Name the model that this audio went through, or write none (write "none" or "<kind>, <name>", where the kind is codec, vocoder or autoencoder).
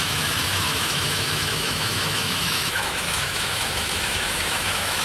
autoencoder, DAC-VAE